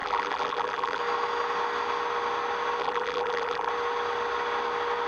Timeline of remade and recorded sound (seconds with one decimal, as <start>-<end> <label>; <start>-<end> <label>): 0.0-1.0 remade; 1.0-2.8 recorded; 2.8-3.7 remade; 3.7-5.1 recorded